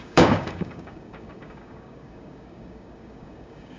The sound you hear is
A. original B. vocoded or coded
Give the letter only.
B